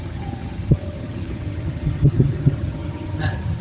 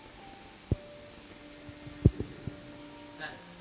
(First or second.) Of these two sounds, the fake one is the first